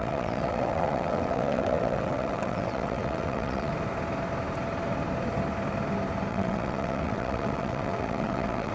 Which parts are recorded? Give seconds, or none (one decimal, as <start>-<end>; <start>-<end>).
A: 3.7-6.3